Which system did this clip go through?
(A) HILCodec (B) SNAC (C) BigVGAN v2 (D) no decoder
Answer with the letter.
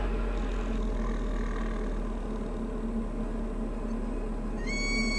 D